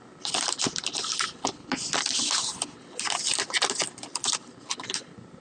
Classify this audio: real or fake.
real